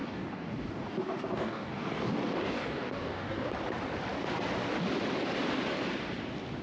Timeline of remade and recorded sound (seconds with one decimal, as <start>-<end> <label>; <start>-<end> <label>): 0.0-3.5 remade; 3.5-6.6 recorded